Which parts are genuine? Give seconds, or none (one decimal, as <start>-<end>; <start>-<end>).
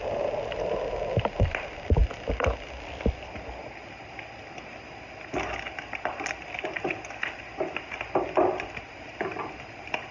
0.0-10.1